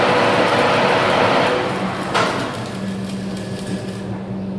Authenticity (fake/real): real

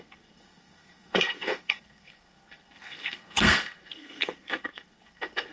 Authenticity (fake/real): fake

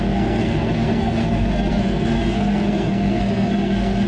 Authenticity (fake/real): fake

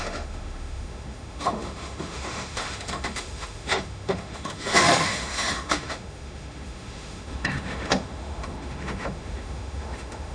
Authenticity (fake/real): fake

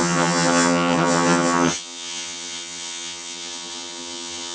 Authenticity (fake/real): fake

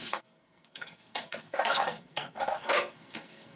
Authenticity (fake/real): fake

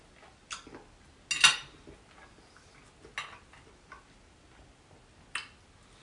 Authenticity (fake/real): real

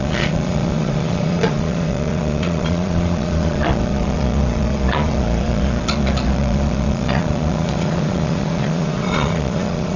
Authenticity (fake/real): fake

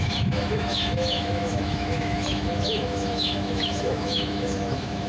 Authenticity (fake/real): fake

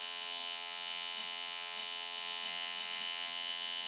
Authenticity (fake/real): fake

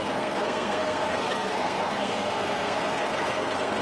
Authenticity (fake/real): fake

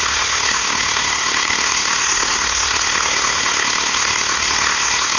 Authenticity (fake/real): fake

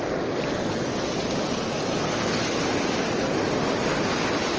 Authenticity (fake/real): real